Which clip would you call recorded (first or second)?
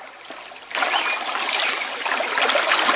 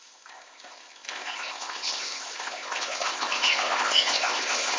first